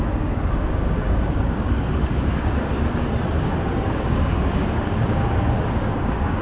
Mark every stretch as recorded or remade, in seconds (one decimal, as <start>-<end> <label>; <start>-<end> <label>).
0.0-2.7 remade; 2.7-3.4 recorded; 3.4-6.4 remade